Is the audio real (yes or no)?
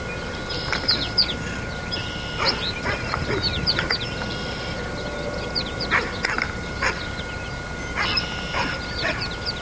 yes